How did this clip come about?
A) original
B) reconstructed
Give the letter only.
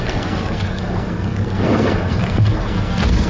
B